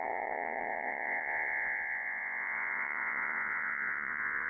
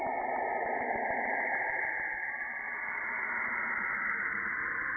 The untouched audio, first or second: second